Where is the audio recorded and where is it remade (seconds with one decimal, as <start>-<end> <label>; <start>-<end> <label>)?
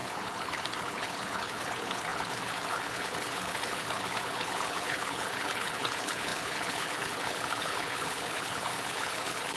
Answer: 0.0-9.6 remade